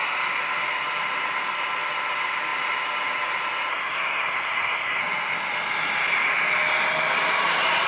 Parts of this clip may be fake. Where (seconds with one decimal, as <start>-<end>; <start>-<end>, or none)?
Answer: 3.7-5.0